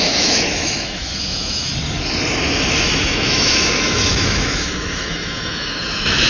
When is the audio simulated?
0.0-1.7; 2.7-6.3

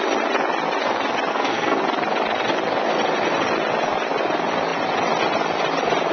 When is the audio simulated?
1.3-1.8

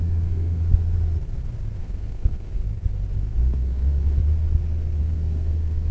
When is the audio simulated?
0.0-0.6; 1.8-2.6; 3.2-4.2; 5.0-5.9